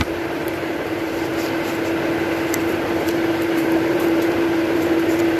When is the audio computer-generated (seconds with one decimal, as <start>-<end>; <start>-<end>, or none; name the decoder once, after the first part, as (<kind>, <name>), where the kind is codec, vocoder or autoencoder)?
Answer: 0.0-1.3 (vocoder, BigVGAN v2); 2.9-5.4